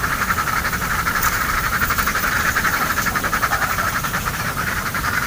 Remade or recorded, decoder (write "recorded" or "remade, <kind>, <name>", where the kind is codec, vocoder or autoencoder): remade, vocoder, BigVGAN v2